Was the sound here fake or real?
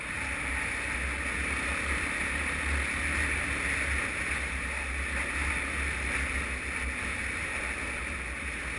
real